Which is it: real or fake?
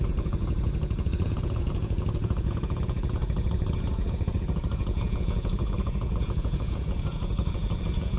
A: fake